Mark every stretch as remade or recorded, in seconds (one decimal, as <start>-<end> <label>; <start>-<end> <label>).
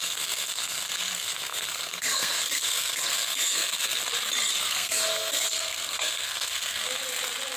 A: 0.0-4.0 remade; 4.0-4.6 recorded; 4.6-6.9 remade; 6.9-7.6 recorded